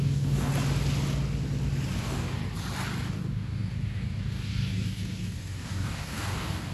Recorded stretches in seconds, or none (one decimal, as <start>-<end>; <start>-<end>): 0.5-2.0; 2.4-3.1